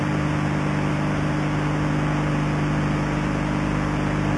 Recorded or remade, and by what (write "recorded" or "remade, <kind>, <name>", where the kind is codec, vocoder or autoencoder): recorded